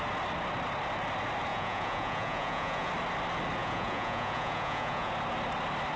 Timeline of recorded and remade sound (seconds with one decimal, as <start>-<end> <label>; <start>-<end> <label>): 0.0-1.5 recorded; 1.5-2.9 remade; 2.9-3.6 recorded; 3.6-5.1 remade; 5.1-6.0 recorded